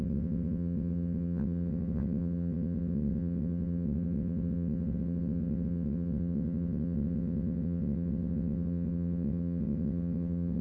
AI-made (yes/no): yes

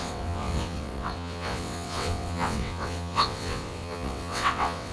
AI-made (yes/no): yes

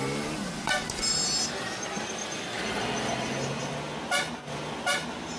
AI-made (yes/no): no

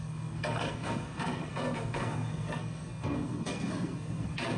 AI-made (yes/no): yes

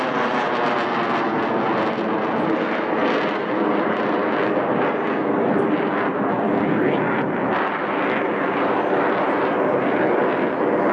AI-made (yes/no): no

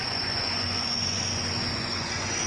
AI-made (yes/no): yes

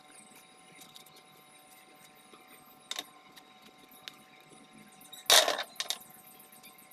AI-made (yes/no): no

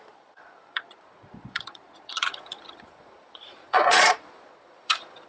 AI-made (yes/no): yes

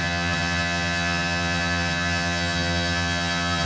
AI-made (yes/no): yes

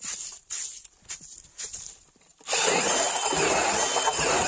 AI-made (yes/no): no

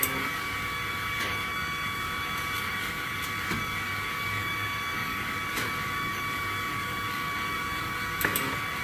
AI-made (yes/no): yes